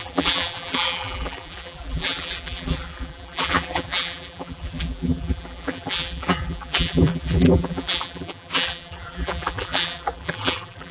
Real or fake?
fake